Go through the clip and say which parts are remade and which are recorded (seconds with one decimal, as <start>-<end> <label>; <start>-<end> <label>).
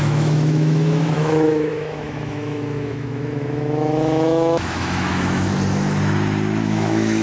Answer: 0.0-5.5 remade; 5.5-6.6 recorded; 6.6-7.2 remade